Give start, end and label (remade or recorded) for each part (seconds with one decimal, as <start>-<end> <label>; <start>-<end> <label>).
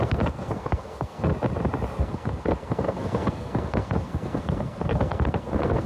0.0-1.3 remade; 1.3-2.0 recorded; 2.0-5.9 remade